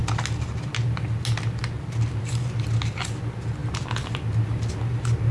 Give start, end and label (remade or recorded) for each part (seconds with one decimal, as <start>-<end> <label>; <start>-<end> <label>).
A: 0.0-5.3 recorded